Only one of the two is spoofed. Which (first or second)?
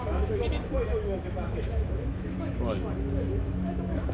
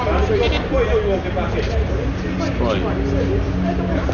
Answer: first